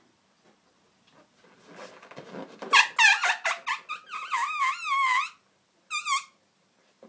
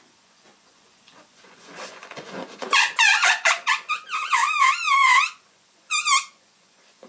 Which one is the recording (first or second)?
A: first